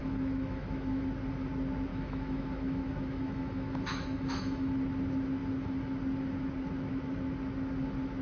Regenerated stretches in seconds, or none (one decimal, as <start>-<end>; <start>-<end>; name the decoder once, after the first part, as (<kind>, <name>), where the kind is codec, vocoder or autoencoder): 0.0-1.0 (autoencoder, DAC-VAE); 1.9-4.7